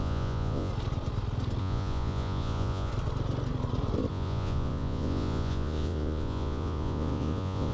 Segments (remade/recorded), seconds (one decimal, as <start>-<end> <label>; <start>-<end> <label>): 0.0-0.7 remade; 0.7-1.6 recorded; 1.6-2.9 remade; 2.9-4.1 recorded; 4.1-7.7 remade

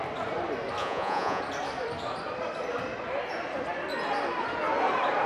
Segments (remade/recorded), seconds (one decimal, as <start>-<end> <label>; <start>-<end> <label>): 0.0-0.8 recorded; 0.8-1.4 remade; 1.4-5.3 recorded

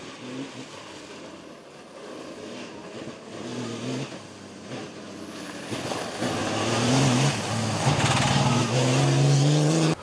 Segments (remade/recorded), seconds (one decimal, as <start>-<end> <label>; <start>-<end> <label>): 0.0-10.0 recorded

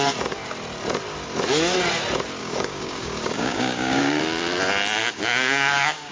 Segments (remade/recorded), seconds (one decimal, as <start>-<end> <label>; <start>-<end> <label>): 0.0-2.4 recorded; 2.4-4.2 remade; 4.2-5.0 recorded; 5.0-6.1 remade

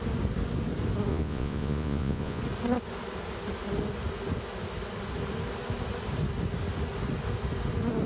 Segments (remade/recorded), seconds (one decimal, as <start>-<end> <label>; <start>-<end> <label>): 0.0-1.1 recorded; 1.1-2.4 remade; 2.4-8.1 recorded

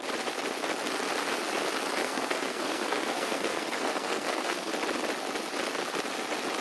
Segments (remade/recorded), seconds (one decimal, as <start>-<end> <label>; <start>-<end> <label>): 0.0-2.0 recorded; 2.0-4.7 remade; 4.7-6.6 recorded

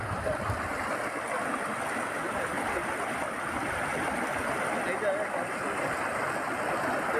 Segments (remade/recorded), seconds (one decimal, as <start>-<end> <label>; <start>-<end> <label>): 0.0-7.2 recorded